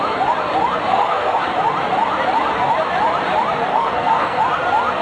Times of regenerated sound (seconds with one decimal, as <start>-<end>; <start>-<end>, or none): 0.9-1.4; 3.7-4.4